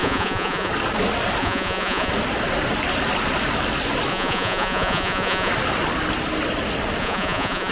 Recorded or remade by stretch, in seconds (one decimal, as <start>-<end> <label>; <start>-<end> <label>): 0.0-0.7 remade; 0.7-1.4 recorded; 1.4-2.1 remade; 2.1-4.1 recorded; 4.1-5.5 remade; 5.5-7.0 recorded; 7.0-7.7 remade